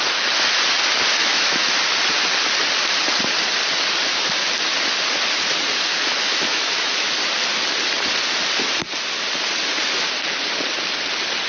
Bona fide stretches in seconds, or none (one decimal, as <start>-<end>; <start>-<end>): 0.0-1.2; 1.7-5.9; 7.1-11.5